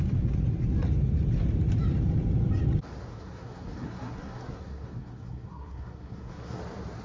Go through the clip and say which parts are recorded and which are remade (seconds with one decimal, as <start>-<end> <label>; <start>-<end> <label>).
0.0-3.1 recorded; 3.1-6.6 remade; 6.6-7.0 recorded

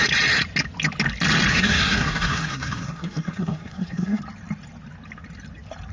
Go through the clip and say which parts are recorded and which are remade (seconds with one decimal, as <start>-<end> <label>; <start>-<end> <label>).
0.0-1.5 recorded; 1.5-4.2 remade; 4.2-5.9 recorded

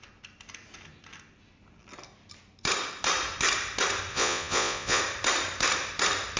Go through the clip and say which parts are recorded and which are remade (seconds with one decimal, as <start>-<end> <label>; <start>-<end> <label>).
0.0-4.1 recorded; 4.1-5.0 remade; 5.0-6.4 recorded

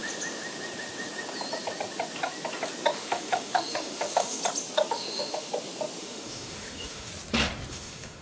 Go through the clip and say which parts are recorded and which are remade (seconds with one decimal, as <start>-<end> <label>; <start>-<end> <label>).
0.0-3.0 recorded; 3.0-4.4 remade; 4.4-4.9 recorded; 4.9-5.5 remade; 5.5-6.0 recorded; 6.0-7.1 remade; 7.1-7.7 recorded; 7.7-8.2 remade

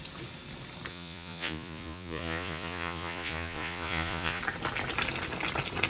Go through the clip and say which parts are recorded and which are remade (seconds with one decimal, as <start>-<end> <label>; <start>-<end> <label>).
0.0-0.9 recorded; 0.9-4.4 remade; 4.4-5.9 recorded

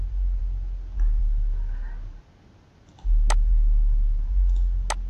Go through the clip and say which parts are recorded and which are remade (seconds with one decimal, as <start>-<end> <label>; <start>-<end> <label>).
0.0-5.1 recorded